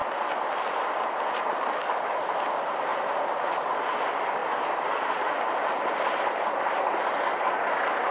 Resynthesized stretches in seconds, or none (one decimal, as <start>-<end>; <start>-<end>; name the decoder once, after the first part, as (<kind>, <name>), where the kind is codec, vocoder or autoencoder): 1.5-2.2 (codec, DAC)